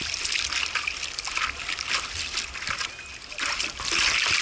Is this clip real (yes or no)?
yes